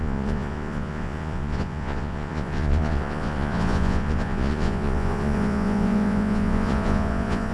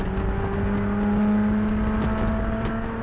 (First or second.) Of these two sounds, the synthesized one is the first